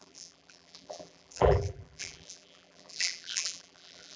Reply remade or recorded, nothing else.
remade